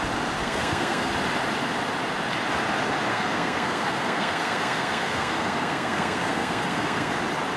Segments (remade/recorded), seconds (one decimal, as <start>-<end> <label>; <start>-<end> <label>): 0.0-0.4 recorded; 0.4-1.1 remade; 1.1-3.1 recorded; 3.1-7.1 remade; 7.1-7.6 recorded